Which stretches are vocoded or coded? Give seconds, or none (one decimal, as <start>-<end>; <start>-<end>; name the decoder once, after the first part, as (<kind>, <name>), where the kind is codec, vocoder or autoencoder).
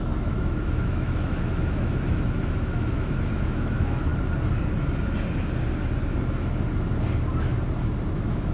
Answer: 0.0-4.1 (autoencoder, DAC-VAE); 8.1-8.5